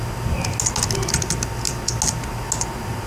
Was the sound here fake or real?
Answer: real